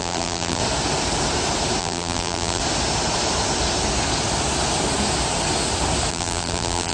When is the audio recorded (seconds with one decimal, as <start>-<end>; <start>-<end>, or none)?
0.6-1.8; 2.6-6.1